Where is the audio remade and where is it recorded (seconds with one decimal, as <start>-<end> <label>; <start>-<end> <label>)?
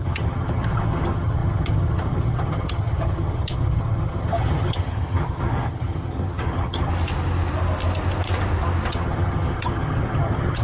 0.0-6.9 remade; 6.9-8.9 recorded; 8.9-10.6 remade